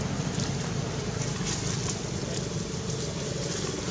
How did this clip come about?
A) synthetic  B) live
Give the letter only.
B